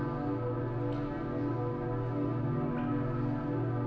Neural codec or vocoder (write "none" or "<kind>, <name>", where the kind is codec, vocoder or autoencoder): none